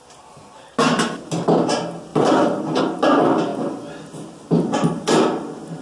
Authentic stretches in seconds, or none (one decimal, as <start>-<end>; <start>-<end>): 0.0-2.1; 2.8-5.8